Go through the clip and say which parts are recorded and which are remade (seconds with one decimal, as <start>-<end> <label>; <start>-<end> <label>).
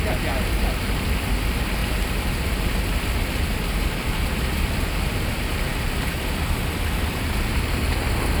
0.0-1.8 recorded; 1.8-3.4 remade; 3.4-8.4 recorded